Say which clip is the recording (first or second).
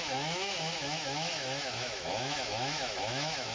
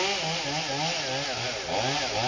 second